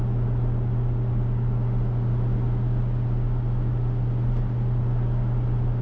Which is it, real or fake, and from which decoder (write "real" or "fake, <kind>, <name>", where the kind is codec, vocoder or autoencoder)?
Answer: real